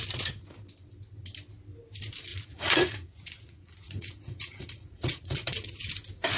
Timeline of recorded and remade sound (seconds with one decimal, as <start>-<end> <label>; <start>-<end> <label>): 0.0-2.3 recorded; 2.3-5.9 remade; 5.9-6.4 recorded